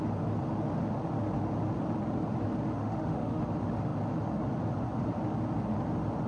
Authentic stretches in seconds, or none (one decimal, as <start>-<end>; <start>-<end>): 0.0-2.8; 3.4-6.3